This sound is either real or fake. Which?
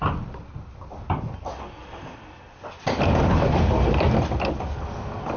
real